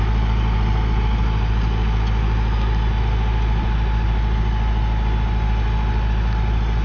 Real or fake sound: real